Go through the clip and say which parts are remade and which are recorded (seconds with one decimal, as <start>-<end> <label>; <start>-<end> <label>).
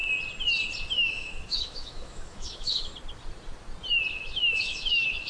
0.0-1.1 recorded; 1.1-2.9 remade; 2.9-4.1 recorded; 4.1-5.3 remade